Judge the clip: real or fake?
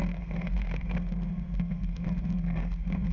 fake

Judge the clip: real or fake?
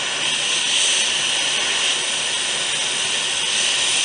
real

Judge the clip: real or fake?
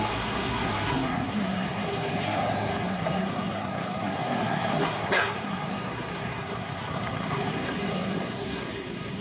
fake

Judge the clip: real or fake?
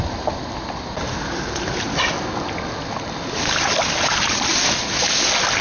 real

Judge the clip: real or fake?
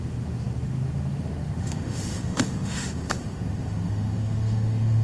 fake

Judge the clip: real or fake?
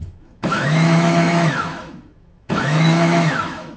fake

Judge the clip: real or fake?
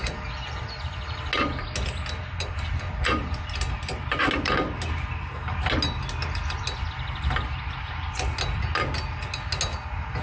real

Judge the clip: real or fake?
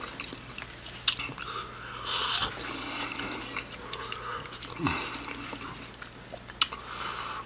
real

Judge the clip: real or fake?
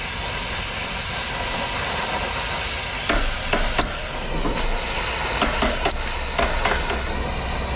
real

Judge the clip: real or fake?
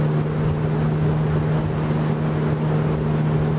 real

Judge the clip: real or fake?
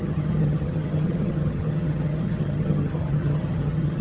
fake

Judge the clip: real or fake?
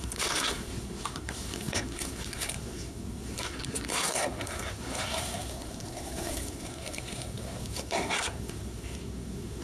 fake